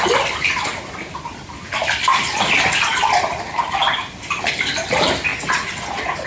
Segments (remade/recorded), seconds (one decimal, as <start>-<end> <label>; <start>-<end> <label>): 0.0-6.3 recorded